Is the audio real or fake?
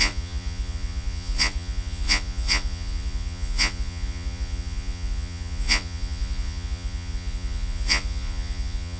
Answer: fake